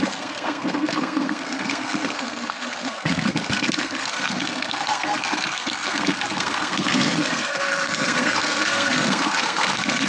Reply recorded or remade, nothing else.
remade